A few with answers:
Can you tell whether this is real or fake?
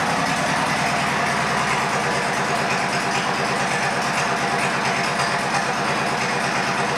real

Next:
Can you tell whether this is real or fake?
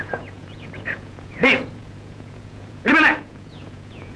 fake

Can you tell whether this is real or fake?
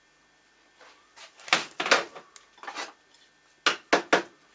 real